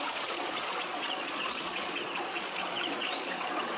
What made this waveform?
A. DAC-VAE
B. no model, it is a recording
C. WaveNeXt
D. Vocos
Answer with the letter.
D